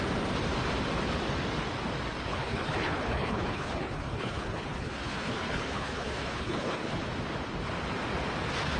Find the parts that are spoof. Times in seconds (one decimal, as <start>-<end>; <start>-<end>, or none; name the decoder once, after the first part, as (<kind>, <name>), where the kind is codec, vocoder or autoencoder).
2.3-7.0 (codec, HILCodec)